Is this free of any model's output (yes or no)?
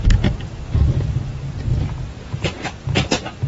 yes